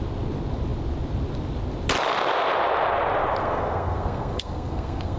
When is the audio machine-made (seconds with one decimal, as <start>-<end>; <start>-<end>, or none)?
3.4-5.2